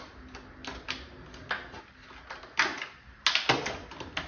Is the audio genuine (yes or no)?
yes